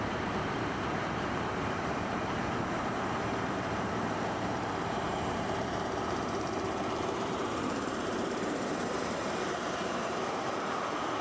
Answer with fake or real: fake